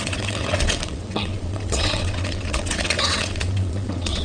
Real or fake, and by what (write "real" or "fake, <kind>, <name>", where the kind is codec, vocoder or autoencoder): fake, vocoder, WaveNeXt